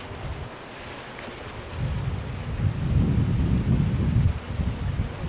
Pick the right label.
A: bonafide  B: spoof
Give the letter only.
A